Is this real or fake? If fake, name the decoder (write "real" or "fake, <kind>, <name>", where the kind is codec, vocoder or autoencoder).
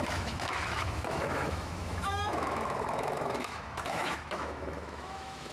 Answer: fake, autoencoder, DAC-VAE